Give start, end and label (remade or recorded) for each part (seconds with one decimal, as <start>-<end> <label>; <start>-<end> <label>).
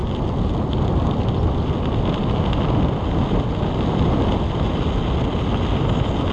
0.0-6.3 recorded